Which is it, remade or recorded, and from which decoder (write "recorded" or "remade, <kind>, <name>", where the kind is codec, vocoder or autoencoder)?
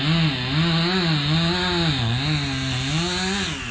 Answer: recorded